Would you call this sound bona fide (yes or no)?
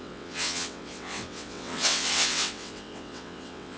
no